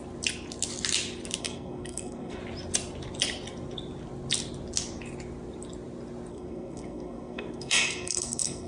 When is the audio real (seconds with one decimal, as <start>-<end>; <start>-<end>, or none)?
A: 0.0-1.4; 2.4-6.3